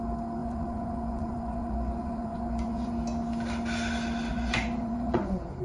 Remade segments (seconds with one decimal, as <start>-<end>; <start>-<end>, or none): 0.4-2.9; 4.3-5.6